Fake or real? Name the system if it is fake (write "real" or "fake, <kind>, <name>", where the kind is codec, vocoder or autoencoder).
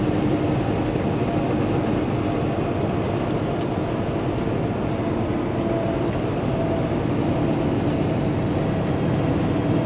real